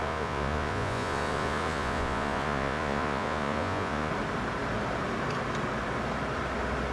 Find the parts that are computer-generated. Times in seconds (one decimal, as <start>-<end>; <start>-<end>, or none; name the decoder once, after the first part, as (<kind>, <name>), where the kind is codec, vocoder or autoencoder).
0.0-4.1 (vocoder, Vocos)